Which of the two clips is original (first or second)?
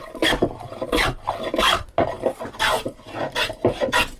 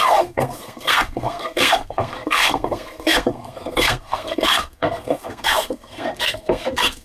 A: first